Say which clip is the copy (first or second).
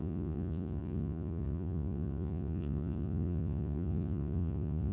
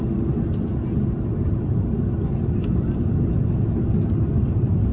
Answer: first